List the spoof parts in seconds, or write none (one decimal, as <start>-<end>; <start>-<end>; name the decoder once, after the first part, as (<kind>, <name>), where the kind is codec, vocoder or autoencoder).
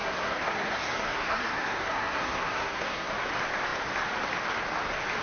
0.0-3.1 (codec, SNAC)